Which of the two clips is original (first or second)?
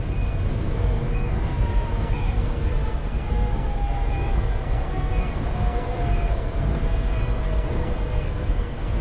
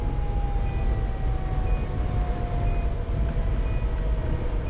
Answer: second